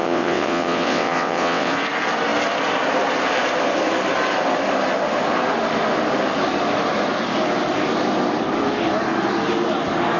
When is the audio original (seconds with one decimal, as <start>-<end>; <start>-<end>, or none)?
1.7-10.2